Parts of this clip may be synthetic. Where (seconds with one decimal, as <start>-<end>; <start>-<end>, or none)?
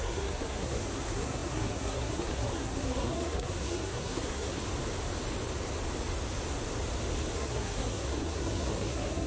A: 0.0-4.6; 7.3-9.3